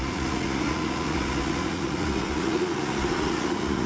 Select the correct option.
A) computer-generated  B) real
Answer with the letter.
A